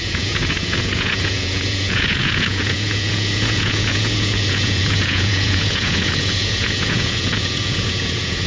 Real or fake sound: fake